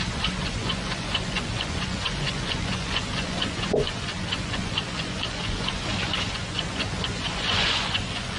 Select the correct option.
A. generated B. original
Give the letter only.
A